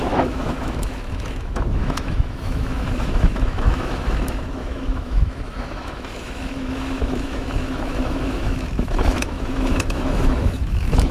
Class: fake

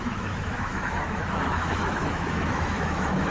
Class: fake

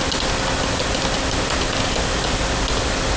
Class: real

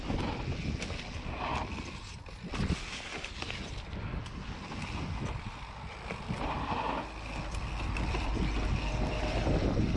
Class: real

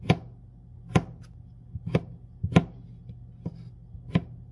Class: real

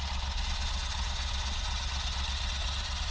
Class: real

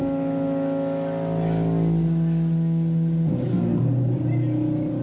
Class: real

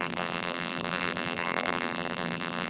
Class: fake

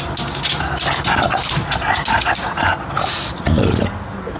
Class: real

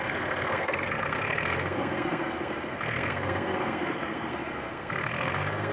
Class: fake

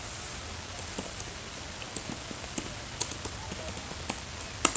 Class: real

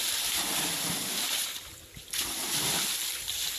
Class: real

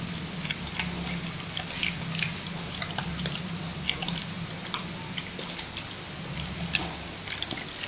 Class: real